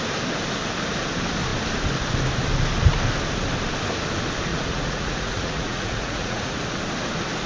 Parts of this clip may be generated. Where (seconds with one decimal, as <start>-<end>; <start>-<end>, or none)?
4.5-6.6